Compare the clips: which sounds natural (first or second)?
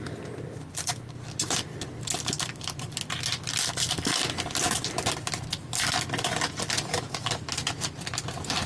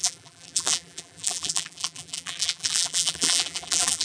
first